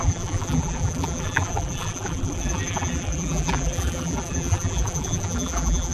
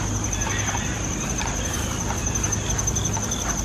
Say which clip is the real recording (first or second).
second